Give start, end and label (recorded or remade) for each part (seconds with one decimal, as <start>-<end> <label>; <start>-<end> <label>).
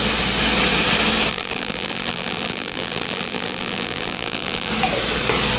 0.0-1.3 recorded; 1.3-4.7 remade; 4.7-5.6 recorded